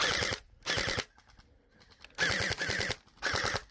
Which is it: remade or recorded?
recorded